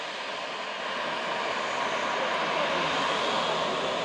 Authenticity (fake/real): real